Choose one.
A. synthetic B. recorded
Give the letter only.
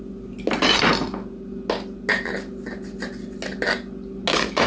B